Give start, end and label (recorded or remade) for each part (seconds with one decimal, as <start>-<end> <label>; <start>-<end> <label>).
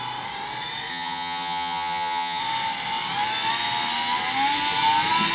0.0-0.9 recorded; 0.9-2.4 remade; 2.4-5.3 recorded